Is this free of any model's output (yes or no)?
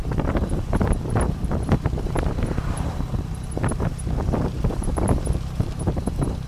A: no